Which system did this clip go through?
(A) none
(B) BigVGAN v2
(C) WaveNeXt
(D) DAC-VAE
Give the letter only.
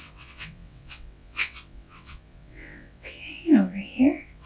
C